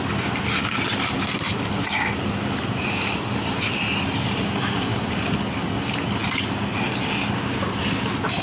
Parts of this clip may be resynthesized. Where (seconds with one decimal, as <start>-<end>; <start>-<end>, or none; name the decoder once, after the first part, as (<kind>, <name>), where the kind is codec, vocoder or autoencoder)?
none